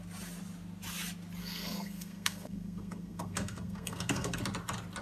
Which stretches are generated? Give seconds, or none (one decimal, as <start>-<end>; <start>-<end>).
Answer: 1.4-4.4

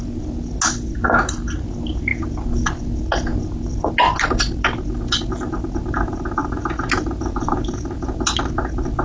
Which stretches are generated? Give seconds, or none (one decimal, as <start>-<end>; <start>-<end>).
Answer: none

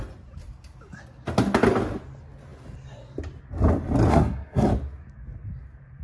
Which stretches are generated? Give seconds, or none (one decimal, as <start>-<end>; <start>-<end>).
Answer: 4.1-4.7